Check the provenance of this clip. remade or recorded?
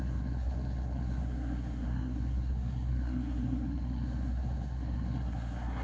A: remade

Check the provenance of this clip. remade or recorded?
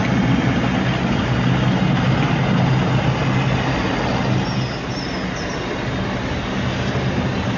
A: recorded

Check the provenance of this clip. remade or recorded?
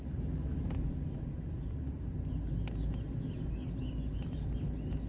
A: recorded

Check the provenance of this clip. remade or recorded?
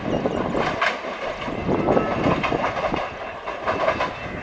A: recorded